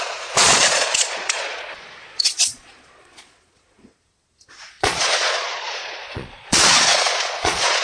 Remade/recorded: remade